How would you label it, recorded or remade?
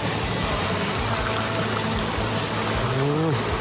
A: recorded